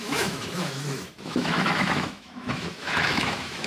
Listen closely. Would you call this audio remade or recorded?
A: remade